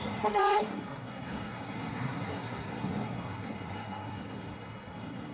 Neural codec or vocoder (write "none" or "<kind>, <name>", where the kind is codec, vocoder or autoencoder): codec, SNAC